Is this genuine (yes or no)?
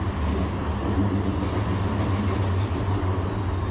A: yes